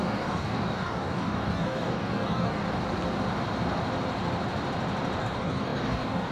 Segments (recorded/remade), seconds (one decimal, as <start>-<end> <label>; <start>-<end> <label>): 0.0-2.6 remade; 2.6-5.2 recorded; 5.2-6.3 remade